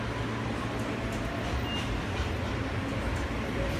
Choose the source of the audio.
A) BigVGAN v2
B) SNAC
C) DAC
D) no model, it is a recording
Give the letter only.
D